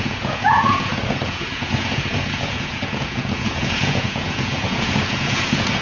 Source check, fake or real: fake